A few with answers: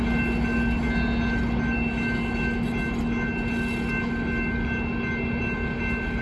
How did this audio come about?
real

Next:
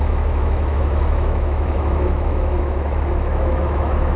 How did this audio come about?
fake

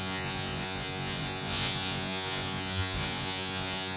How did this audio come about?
fake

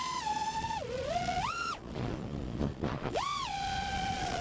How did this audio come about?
fake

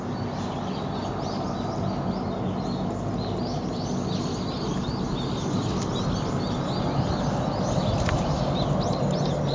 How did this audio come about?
real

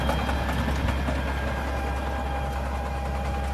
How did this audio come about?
real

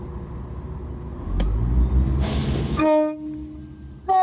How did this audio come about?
real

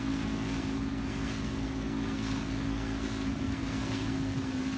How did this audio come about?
fake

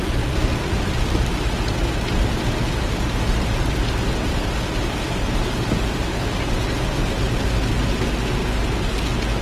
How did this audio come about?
real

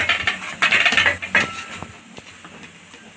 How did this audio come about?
real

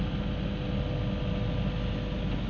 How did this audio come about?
real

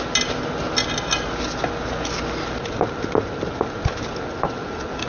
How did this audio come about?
real